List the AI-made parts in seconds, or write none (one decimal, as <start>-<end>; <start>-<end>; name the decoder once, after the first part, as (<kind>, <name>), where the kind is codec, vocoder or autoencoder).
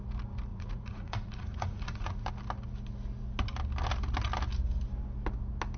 0.5-2.3 (vocoder, Vocos)